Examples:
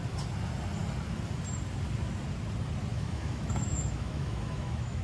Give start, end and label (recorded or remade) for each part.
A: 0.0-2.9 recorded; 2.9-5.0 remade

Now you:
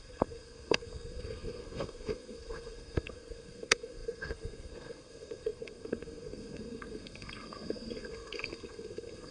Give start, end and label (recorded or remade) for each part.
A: 0.0-9.3 remade

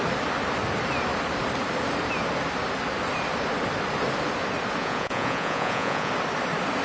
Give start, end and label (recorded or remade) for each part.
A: 0.0-4.8 recorded; 4.8-6.1 remade; 6.1-6.8 recorded

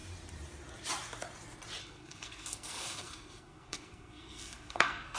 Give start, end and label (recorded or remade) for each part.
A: 0.0-1.8 recorded; 1.8-5.2 remade

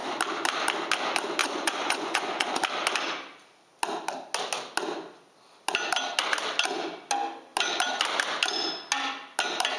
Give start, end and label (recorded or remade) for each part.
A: 0.0-1.4 recorded; 1.4-2.6 remade; 2.6-9.8 recorded

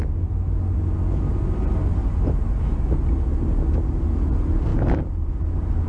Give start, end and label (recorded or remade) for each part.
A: 0.0-4.7 recorded; 4.7-5.3 remade; 5.3-5.9 recorded

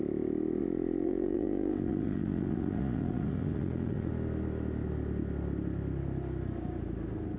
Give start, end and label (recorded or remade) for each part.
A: 0.0-0.6 recorded; 0.6-4.1 remade; 4.1-7.4 recorded

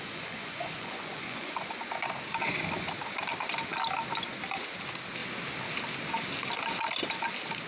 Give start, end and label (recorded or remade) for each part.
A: 0.0-1.7 remade; 1.7-7.7 recorded